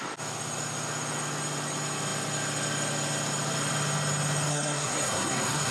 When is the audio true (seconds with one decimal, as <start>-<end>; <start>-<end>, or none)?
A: 0.0-4.5